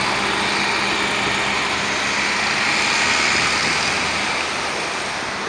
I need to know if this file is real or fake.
real